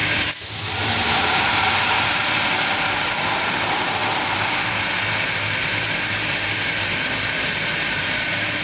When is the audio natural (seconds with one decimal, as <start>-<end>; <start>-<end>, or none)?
0.0-1.2